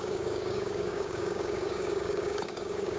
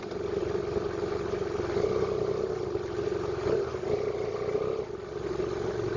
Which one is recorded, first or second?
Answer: second